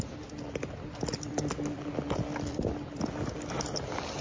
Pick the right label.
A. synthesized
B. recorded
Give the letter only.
B